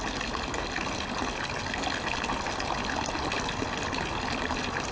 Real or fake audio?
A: real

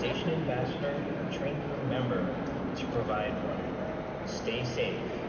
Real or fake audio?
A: real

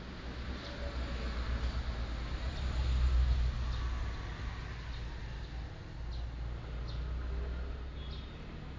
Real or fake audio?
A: real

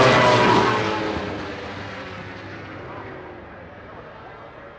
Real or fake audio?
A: real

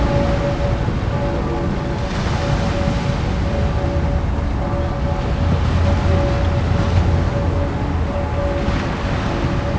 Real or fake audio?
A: real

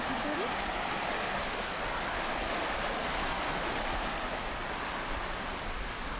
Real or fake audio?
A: real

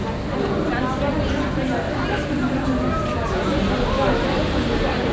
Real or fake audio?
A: real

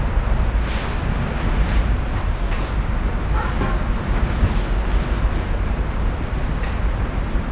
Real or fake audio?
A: real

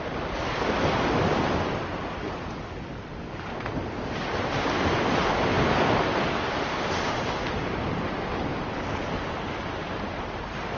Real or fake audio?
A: real